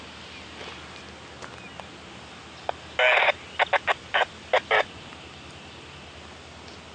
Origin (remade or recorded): recorded